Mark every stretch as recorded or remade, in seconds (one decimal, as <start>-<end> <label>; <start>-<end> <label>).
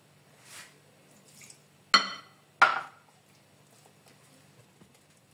0.0-2.7 recorded; 2.7-3.3 remade; 3.3-5.3 recorded